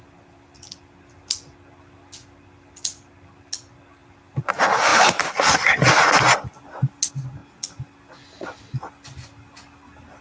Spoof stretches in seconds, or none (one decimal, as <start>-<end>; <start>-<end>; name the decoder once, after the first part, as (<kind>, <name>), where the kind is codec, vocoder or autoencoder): none